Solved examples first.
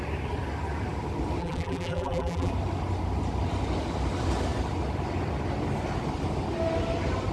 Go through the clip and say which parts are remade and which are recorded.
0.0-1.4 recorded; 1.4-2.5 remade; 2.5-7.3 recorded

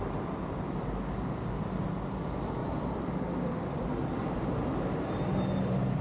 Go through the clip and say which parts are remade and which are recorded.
0.0-2.6 recorded; 2.6-3.9 remade; 3.9-6.0 recorded

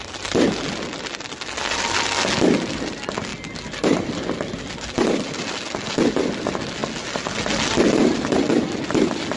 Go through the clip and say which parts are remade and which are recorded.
0.0-9.4 recorded

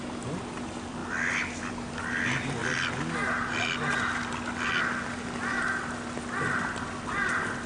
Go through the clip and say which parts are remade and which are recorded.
0.0-7.7 recorded

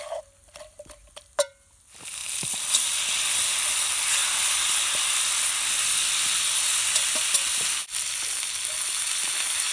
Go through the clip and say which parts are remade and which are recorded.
0.0-2.2 recorded; 2.2-3.1 remade; 3.1-4.2 recorded; 4.2-5.8 remade; 5.8-9.7 recorded